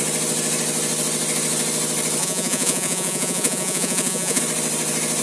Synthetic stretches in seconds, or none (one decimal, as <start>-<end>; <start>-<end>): 2.2-4.4